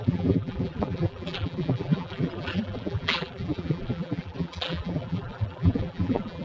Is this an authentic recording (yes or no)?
no